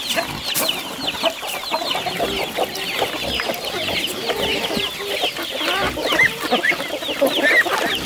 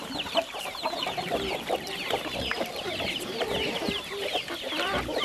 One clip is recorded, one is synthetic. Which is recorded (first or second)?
first